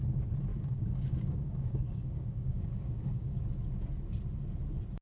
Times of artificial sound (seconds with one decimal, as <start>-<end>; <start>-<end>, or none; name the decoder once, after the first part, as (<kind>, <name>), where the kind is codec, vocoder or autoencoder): 0.5-3.5 (codec, DAC)